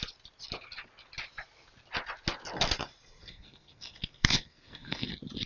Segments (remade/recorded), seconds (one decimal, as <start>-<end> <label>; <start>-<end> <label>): 0.0-3.2 recorded; 3.2-5.1 remade; 5.1-5.5 recorded